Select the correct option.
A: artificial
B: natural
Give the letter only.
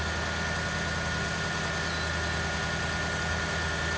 B